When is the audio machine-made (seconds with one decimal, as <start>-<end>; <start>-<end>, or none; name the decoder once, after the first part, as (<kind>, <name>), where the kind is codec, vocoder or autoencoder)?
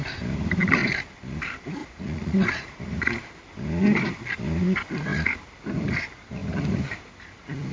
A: 1.8-2.8 (vocoder, Vocos)